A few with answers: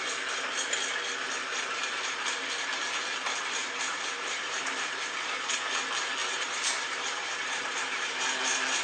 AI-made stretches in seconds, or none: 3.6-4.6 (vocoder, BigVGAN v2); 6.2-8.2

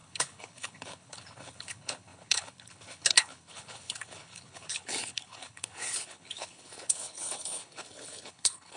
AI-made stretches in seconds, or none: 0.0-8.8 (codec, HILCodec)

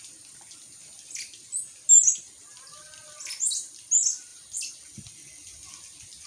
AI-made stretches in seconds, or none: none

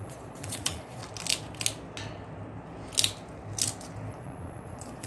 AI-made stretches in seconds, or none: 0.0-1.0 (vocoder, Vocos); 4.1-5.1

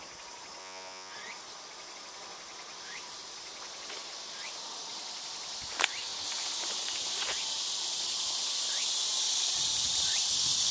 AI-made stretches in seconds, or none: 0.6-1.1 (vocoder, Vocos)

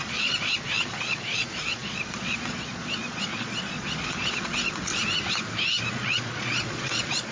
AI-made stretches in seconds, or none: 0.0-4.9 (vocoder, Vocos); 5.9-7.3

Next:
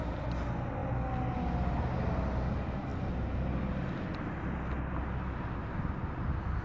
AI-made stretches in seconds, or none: none

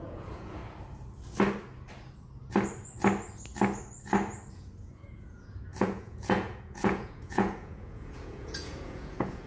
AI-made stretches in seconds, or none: 0.0-0.6 (vocoder, Vocos); 4.5-9.5